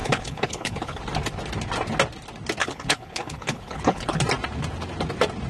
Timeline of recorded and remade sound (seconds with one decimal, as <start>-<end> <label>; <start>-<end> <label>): 0.0-1.0 remade; 1.0-2.6 recorded; 2.6-4.2 remade; 4.2-5.5 recorded